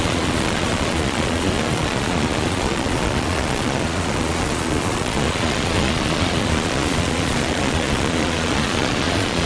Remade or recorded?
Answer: remade